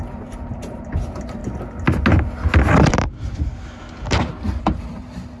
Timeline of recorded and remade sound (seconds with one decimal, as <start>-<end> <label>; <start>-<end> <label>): 0.0-1.4 remade; 1.4-4.6 recorded; 4.6-5.4 remade